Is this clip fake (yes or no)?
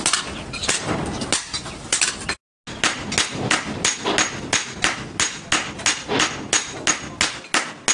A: no